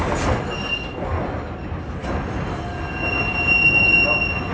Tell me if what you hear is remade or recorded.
recorded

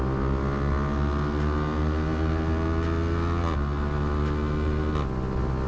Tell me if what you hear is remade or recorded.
recorded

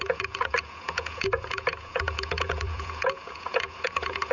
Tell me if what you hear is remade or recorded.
remade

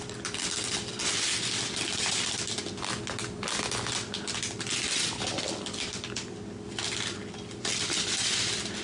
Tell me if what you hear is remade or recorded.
recorded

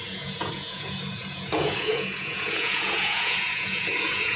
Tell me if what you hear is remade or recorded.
remade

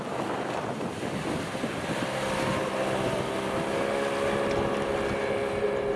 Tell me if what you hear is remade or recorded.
recorded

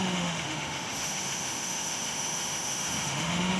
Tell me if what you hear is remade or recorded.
remade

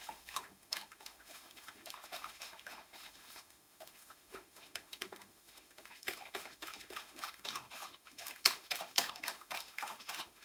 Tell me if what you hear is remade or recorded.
remade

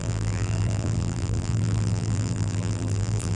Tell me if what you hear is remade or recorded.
remade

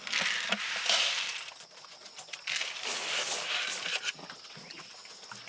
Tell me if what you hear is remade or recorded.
recorded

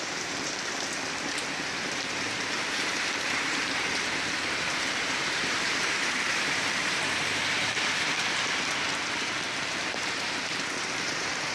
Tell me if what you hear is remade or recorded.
remade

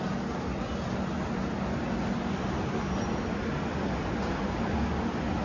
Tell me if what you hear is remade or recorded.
recorded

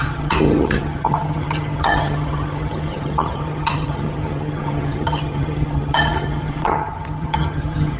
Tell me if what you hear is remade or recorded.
remade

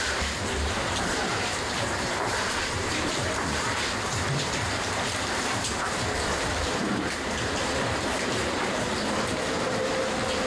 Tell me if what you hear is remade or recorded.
remade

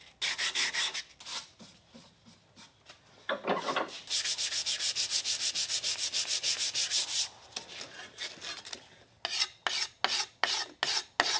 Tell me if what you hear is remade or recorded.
recorded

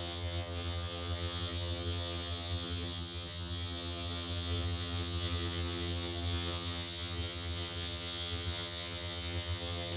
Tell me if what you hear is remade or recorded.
remade